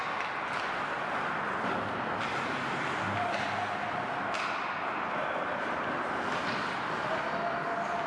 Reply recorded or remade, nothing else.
recorded